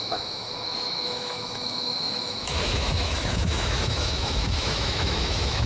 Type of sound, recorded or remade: remade